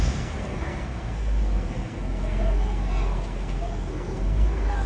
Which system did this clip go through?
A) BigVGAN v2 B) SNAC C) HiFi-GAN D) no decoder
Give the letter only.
B